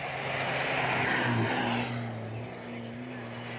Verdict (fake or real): real